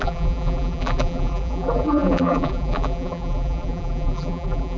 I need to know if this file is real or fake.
fake